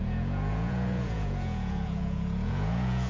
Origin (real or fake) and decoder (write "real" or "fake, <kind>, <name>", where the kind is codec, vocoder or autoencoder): fake, vocoder, Vocos